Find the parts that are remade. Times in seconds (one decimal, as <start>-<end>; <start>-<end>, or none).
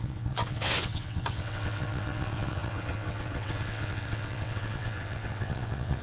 0.0-6.0